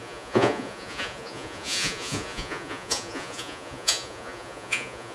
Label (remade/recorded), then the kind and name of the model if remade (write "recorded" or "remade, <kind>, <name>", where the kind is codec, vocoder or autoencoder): remade, vocoder, Vocos